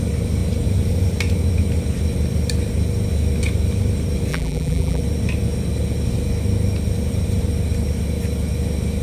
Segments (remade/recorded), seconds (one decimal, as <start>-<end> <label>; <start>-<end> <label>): 0.0-4.3 recorded; 4.3-5.0 remade; 5.0-9.0 recorded

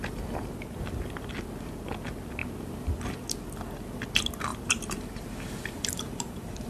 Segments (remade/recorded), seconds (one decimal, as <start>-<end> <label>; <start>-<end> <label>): 0.0-4.5 recorded; 4.5-6.7 remade